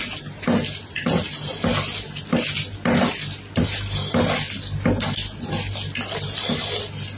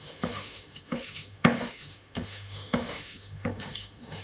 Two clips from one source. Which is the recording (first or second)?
first